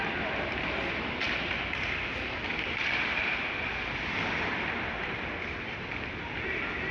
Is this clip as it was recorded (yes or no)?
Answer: no